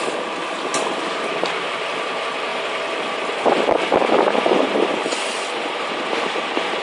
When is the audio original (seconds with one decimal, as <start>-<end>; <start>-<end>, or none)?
0.0-0.7; 1.7-2.5